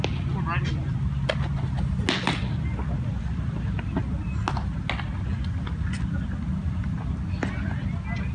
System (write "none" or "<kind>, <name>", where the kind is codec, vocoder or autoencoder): none